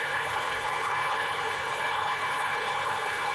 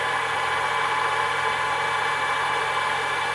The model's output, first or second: first